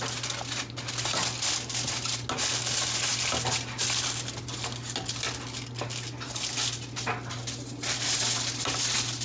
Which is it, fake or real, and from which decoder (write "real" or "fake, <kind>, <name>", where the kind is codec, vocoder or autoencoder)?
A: real